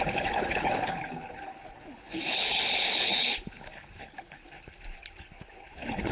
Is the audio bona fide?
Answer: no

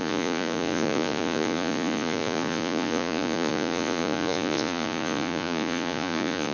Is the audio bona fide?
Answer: no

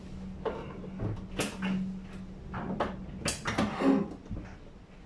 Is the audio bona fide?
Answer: yes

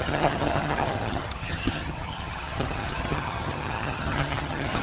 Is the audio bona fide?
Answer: no